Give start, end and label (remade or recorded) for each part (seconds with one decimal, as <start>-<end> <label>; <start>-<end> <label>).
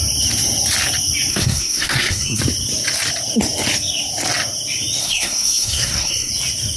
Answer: 0.0-1.3 recorded; 1.3-2.4 remade; 2.4-5.0 recorded; 5.0-6.3 remade; 6.3-6.8 recorded